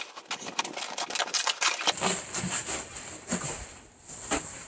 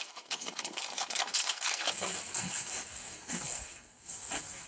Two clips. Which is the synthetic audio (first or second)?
second